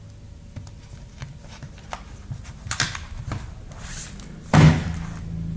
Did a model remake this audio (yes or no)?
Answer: no